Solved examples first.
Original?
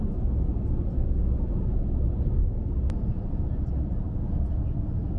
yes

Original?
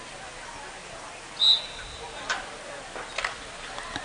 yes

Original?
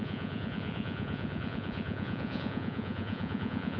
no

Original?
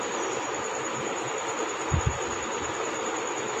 yes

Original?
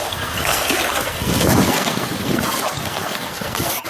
no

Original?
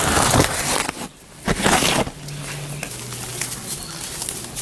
yes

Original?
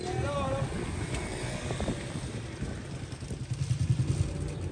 yes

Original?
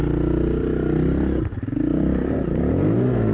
yes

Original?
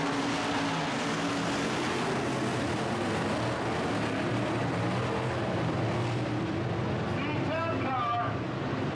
yes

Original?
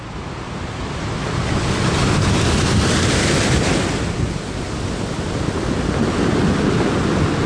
yes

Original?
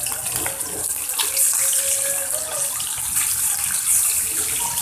yes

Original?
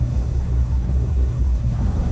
no